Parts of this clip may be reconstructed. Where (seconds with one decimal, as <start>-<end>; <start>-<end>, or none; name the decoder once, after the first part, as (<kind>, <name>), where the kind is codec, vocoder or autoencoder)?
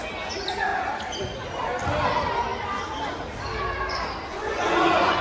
4.3-5.2 (vocoder, Vocos)